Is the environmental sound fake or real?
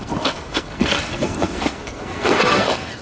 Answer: fake